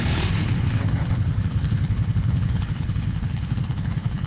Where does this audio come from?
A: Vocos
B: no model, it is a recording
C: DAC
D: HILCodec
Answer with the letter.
D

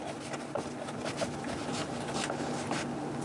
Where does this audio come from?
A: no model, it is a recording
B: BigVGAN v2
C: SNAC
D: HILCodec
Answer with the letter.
A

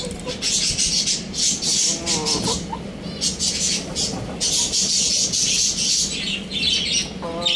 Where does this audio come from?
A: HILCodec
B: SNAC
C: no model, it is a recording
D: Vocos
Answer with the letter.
C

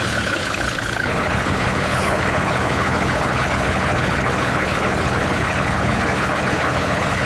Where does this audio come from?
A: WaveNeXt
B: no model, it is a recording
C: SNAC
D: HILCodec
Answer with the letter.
D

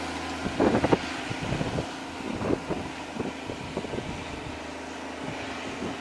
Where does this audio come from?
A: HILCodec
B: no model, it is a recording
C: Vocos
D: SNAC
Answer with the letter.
B